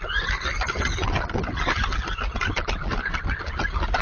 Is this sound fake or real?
real